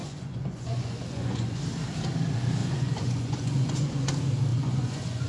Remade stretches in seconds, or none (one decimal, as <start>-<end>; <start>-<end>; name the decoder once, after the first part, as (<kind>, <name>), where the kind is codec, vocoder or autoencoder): 0.0-1.6 (vocoder, Vocos); 2.6-4.1; 4.5-5.3